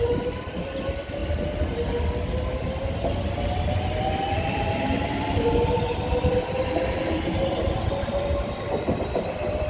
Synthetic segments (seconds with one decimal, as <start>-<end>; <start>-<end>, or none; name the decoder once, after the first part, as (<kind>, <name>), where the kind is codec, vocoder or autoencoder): 0.0-1.2 (vocoder, BigVGAN v2); 4.4-9.7

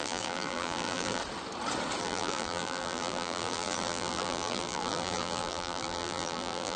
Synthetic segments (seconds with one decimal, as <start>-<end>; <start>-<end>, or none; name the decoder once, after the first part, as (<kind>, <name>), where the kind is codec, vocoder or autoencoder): 0.0-1.2 (vocoder, BigVGAN v2); 2.0-6.8